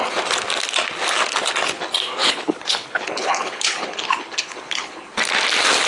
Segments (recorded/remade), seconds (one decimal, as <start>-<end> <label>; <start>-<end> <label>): 0.0-2.2 recorded; 2.2-5.2 remade; 5.2-5.9 recorded